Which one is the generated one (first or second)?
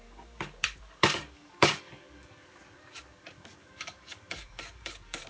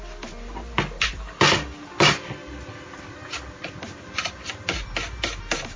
first